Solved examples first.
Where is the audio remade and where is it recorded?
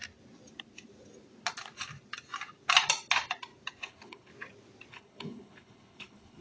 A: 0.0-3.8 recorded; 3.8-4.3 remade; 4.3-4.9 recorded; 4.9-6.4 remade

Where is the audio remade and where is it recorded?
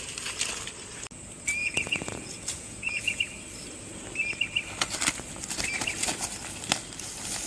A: 0.0-1.6 recorded; 1.6-3.2 remade; 3.2-7.5 recorded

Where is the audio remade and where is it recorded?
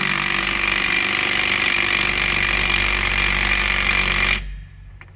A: 0.0-5.2 recorded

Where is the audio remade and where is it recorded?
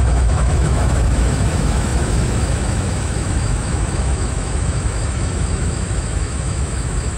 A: 0.0-7.2 remade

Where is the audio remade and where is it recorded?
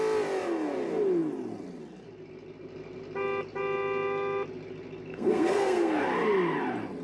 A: 0.0-5.1 recorded; 5.1-6.0 remade; 6.0-7.0 recorded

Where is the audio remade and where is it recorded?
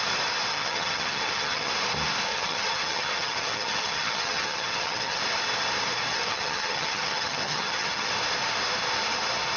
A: 0.0-0.5 recorded; 0.5-1.7 remade; 1.7-2.3 recorded; 2.3-5.2 remade; 5.2-6.1 recorded; 6.1-8.1 remade; 8.1-9.6 recorded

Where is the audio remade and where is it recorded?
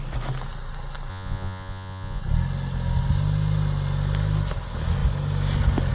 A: 0.0-1.1 recorded; 1.1-2.2 remade; 2.2-5.9 recorded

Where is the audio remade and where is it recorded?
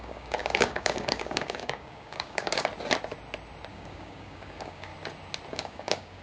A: 0.0-2.7 remade; 2.7-3.7 recorded; 3.7-4.9 remade; 4.9-5.5 recorded; 5.5-6.2 remade